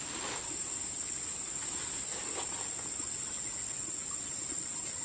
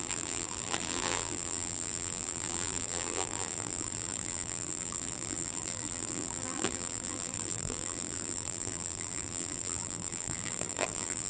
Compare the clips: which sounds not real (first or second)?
second